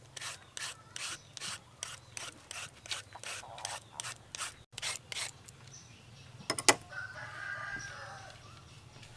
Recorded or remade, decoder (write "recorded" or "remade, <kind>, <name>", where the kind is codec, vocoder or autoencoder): recorded